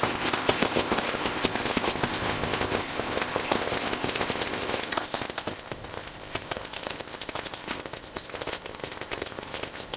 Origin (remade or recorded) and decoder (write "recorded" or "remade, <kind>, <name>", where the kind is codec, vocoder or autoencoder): remade, codec, ZipCodec